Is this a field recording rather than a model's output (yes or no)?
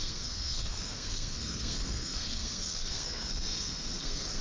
no